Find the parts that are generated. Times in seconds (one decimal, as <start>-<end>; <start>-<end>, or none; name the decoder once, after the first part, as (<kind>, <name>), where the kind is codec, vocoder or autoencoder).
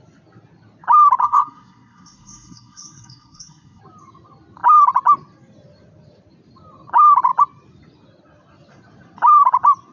1.2-3.8 (codec, SNAC)